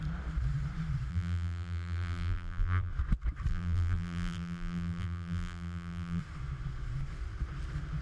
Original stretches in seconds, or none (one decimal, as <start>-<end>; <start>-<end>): 0.0-1.1; 2.9-3.5; 6.2-8.0